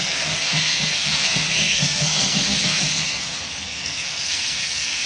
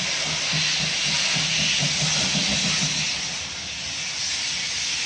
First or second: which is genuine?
second